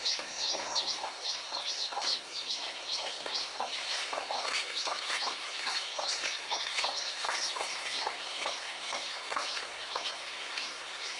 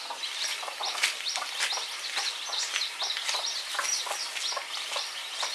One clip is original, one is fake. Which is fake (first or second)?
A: first